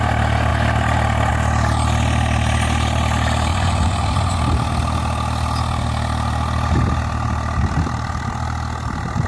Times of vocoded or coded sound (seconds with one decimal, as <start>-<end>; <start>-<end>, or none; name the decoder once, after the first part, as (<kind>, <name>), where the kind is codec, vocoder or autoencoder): 3.5-4.4 (vocoder, Vocos)